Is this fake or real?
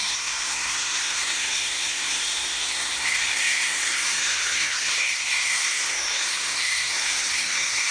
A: fake